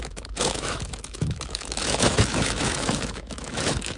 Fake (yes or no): yes